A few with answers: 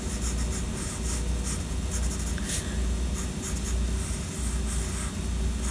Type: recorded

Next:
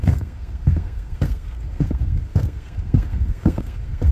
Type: remade